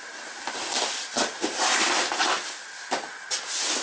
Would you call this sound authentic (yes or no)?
yes